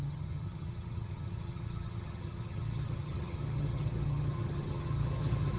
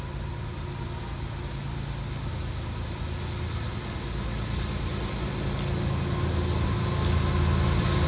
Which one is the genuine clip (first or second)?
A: second